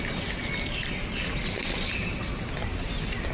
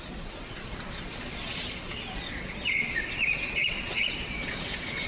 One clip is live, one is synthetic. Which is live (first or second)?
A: first